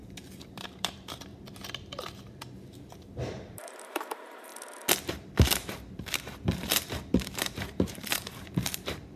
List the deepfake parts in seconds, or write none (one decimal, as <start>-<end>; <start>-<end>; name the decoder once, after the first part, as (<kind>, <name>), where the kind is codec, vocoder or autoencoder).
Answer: 0.0-1.3 (vocoder, BigVGAN v2); 2.9-4.5; 5.1-9.2